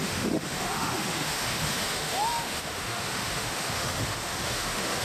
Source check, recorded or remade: remade